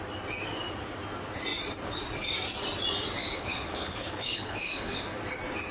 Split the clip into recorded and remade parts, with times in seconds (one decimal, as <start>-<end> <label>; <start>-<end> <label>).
0.0-3.2 recorded; 3.2-5.0 remade; 5.0-5.7 recorded